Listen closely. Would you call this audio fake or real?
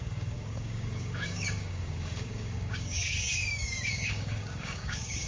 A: fake